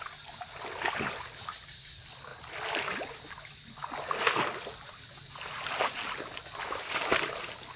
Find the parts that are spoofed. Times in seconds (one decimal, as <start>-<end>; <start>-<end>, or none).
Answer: none